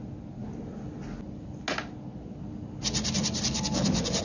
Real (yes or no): yes